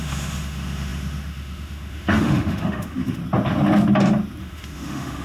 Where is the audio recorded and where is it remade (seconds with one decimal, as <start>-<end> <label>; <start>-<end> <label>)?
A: 0.0-3.2 remade; 3.2-4.4 recorded; 4.4-5.2 remade